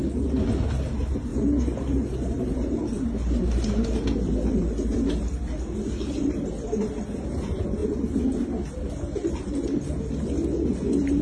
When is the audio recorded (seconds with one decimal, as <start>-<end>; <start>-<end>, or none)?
0.0-11.2